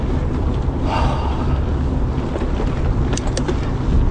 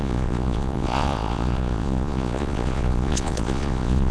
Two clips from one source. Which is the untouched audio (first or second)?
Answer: first